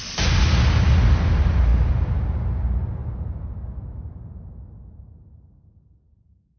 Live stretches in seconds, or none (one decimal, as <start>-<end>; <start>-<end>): 0.0-6.6